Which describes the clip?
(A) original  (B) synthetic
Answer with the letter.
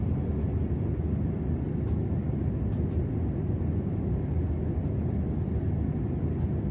A